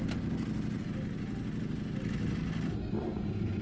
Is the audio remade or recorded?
recorded